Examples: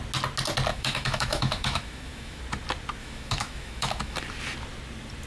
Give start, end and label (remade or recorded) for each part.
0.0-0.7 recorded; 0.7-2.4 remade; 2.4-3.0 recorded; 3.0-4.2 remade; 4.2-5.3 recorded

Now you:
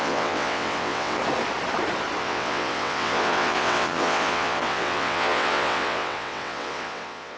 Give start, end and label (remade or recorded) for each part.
0.0-1.2 remade; 1.2-2.2 recorded; 2.2-7.4 remade

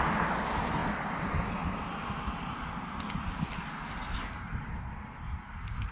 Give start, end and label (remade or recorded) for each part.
0.0-0.8 recorded; 0.8-3.4 remade; 3.4-5.9 recorded

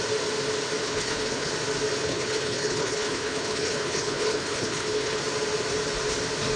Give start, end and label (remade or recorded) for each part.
0.0-0.8 recorded; 0.8-1.5 remade; 1.5-2.0 recorded; 2.0-5.2 remade; 5.2-6.6 recorded